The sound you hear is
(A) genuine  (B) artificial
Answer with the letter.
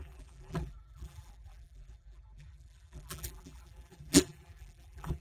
B